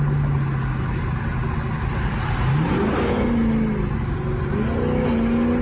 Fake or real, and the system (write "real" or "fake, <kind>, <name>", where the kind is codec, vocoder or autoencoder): real